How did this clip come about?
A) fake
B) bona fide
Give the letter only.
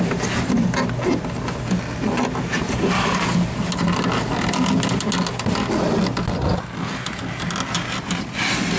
B